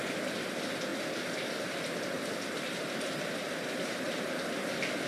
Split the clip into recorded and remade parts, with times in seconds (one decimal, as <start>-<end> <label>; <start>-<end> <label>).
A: 0.0-0.9 recorded; 0.9-4.0 remade; 4.0-5.1 recorded

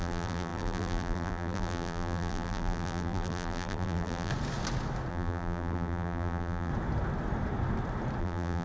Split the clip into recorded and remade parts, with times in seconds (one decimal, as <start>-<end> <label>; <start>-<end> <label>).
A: 0.0-4.3 remade; 4.3-5.1 recorded; 5.1-6.7 remade; 6.7-8.2 recorded; 8.2-8.6 remade